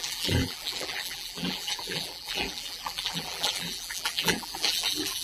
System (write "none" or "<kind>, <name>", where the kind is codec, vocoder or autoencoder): vocoder, BigVGAN v2